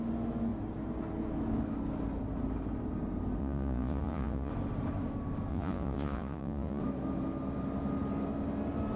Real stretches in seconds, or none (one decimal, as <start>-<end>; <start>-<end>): 0.0-3.4; 4.5-5.5; 6.8-9.0